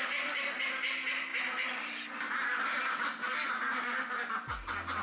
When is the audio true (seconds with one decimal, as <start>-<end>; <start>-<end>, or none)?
0.0-5.0